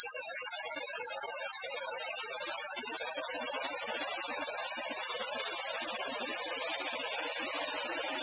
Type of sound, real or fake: real